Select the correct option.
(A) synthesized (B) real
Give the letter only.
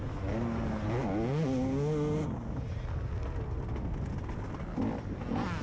B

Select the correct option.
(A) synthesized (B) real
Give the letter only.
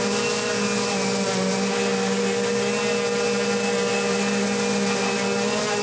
B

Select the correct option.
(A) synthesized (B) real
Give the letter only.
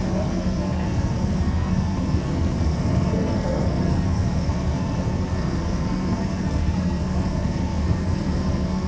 A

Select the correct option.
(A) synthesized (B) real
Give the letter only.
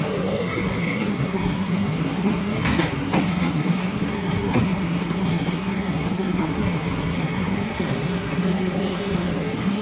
A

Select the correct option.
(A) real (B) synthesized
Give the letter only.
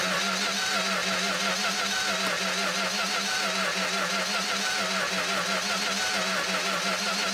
A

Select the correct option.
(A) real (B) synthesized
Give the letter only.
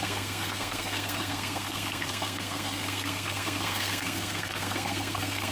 B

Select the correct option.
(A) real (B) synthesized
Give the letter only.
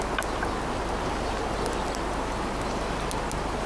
A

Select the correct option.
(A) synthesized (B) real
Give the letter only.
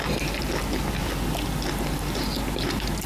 B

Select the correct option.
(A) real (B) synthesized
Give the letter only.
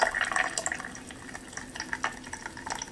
A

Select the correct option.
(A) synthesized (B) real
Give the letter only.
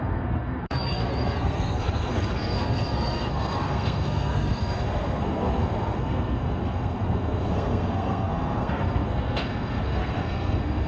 A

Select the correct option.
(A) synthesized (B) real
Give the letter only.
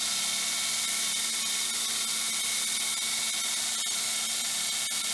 B